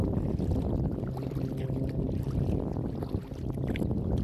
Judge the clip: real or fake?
real